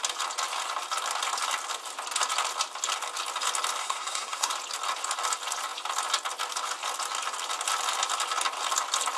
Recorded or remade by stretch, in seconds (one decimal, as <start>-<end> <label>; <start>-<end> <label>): 0.0-3.8 recorded; 3.8-4.5 remade; 4.5-9.2 recorded